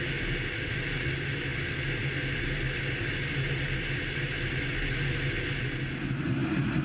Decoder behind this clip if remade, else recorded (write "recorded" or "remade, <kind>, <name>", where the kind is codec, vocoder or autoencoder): recorded